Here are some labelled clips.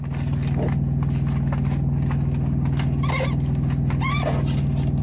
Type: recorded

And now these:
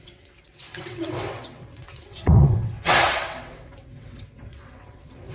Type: remade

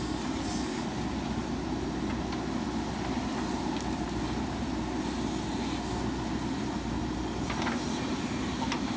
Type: recorded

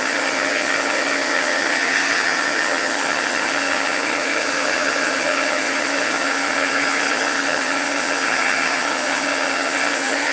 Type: remade